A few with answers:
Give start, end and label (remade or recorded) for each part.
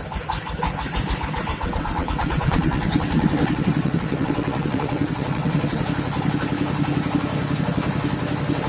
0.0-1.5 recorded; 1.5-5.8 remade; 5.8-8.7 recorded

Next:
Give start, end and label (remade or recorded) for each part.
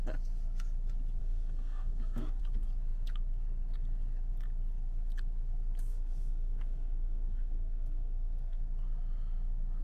0.0-1.2 recorded; 1.2-2.4 remade; 2.4-5.9 recorded; 5.9-8.6 remade; 8.6-9.8 recorded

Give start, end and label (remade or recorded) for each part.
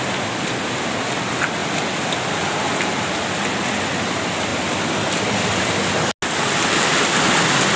0.0-1.6 recorded; 1.6-3.5 remade; 3.5-7.8 recorded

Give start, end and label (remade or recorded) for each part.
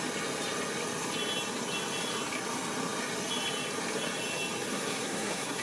0.0-4.7 recorded; 4.7-5.6 remade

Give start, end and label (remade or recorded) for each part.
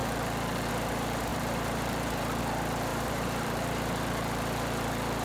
0.0-1.3 recorded; 1.3-2.4 remade; 2.4-2.9 recorded; 2.9-4.1 remade; 4.1-5.2 recorded